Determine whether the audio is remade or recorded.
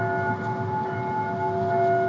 recorded